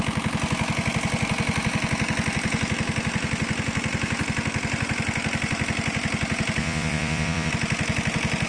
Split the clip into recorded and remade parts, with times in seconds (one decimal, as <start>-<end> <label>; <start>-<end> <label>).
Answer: 0.0-6.6 recorded; 6.6-7.5 remade; 7.5-8.5 recorded

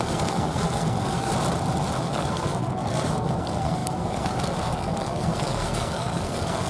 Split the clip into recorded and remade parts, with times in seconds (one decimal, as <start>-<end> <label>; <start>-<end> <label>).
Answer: 0.0-1.3 remade; 1.3-2.0 recorded; 2.0-6.7 remade